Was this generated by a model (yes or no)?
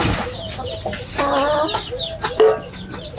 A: no